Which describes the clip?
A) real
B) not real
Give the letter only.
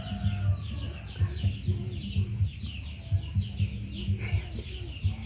A